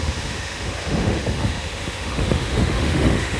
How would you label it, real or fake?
fake